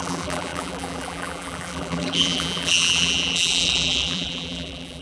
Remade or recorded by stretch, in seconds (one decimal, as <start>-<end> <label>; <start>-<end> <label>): 0.0-5.0 remade